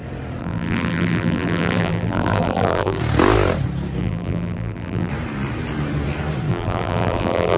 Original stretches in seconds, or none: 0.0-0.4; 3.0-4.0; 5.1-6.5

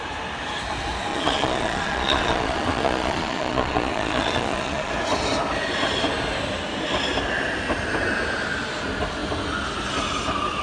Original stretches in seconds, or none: 0.0-1.1; 4.9-10.6

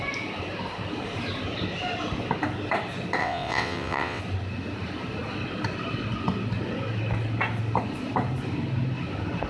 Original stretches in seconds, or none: 0.0-3.2; 4.2-9.5

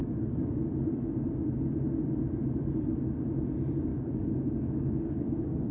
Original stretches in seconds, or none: 0.7-3.9

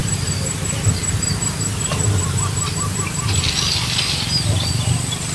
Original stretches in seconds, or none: 0.0-5.3

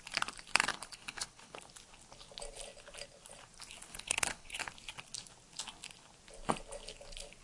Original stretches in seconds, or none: 0.0-0.7; 1.6-3.9; 4.6-7.4

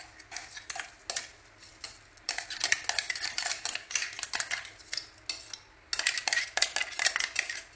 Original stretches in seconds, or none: 0.0-7.8